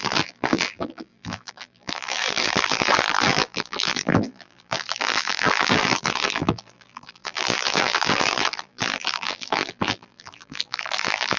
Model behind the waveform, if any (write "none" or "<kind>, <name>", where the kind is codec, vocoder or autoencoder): vocoder, BigVGAN v2